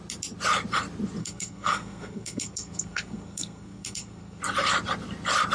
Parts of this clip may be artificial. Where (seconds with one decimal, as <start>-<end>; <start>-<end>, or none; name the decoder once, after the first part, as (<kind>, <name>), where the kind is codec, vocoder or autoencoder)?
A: 1.2-4.4 (codec, SNAC)